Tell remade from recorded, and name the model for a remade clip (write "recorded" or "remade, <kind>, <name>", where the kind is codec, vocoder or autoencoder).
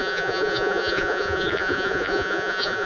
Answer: remade, vocoder, Vocos